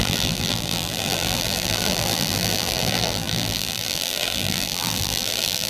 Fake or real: fake